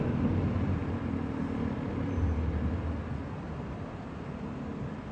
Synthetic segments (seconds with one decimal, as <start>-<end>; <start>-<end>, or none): none